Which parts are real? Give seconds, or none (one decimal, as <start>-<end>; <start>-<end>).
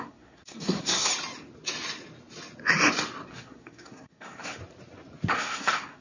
1.1-3.3; 4.6-5.3